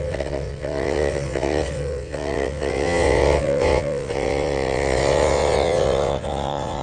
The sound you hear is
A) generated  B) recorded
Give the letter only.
A